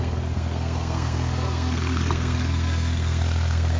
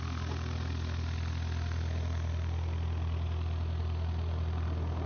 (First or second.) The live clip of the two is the second